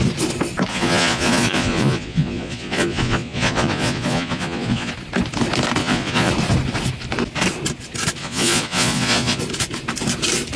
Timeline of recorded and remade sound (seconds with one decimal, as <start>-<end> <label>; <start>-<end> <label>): 0.0-0.7 recorded; 0.7-4.9 remade; 4.9-5.8 recorded; 5.8-6.3 remade; 6.3-8.2 recorded; 8.2-9.4 remade; 9.4-10.6 recorded